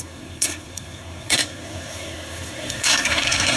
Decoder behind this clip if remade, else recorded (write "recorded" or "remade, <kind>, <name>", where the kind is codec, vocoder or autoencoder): remade, codec, SNAC